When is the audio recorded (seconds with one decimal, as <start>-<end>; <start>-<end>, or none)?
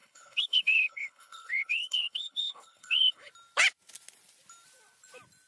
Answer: 3.3-5.5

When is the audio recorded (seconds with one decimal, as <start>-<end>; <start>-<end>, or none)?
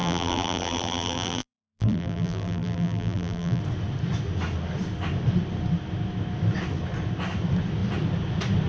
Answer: 3.6-8.7